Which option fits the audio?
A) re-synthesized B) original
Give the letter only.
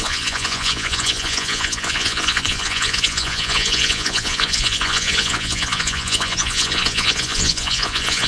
A